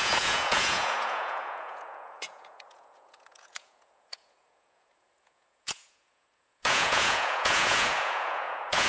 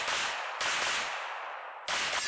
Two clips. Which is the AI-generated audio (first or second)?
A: first